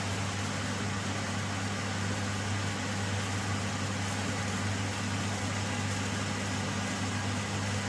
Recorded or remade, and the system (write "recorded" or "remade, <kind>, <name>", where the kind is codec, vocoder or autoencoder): recorded